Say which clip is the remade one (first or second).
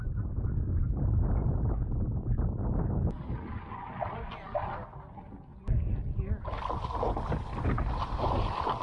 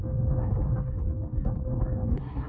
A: second